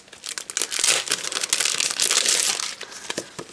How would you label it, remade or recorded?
recorded